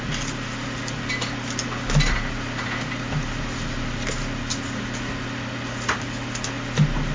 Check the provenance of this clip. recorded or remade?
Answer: recorded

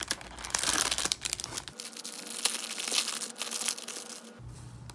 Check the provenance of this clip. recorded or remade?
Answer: recorded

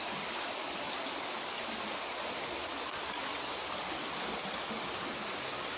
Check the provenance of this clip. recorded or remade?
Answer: recorded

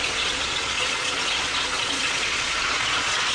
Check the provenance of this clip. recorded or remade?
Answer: remade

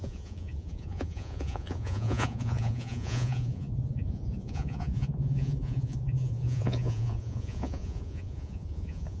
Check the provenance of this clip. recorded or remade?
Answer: remade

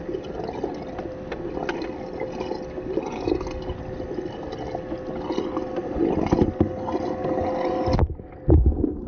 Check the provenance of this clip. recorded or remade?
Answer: recorded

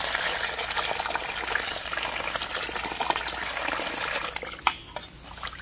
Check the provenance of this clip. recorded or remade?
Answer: recorded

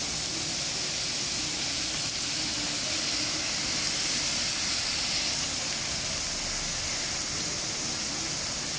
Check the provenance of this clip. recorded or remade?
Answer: recorded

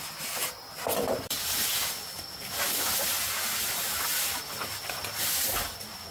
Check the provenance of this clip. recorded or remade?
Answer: recorded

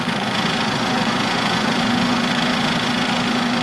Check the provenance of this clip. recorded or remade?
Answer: remade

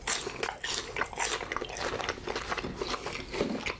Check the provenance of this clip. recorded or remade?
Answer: recorded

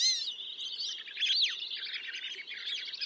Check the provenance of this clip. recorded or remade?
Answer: recorded